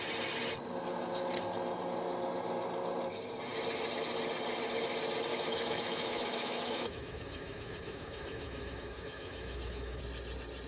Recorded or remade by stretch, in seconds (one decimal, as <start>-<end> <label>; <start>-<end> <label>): 0.0-5.3 recorded; 5.3-10.0 remade; 10.0-10.7 recorded